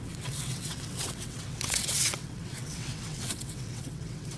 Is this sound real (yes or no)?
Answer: no